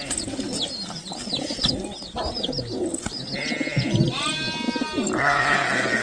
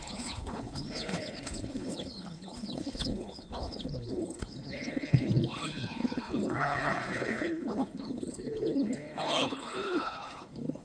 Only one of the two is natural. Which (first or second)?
first